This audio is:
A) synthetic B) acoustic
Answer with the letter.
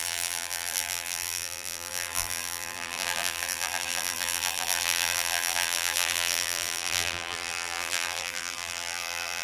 A